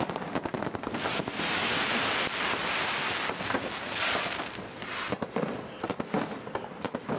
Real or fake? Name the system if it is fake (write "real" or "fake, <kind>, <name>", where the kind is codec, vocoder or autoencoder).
real